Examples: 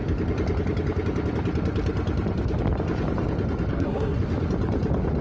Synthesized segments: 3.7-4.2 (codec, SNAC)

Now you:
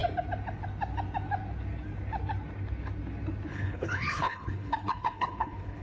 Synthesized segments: 3.5-5.8 (codec, HILCodec)